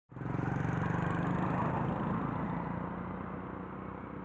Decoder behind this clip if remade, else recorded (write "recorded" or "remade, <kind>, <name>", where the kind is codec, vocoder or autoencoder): recorded